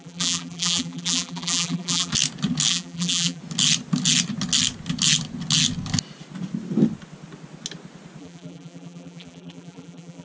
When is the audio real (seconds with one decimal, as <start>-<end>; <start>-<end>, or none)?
2.1-2.7; 3.4-8.2